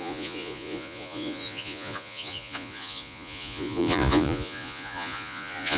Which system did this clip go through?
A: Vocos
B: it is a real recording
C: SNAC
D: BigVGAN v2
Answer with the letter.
A